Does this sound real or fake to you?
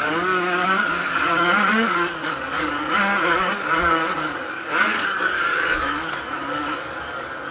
fake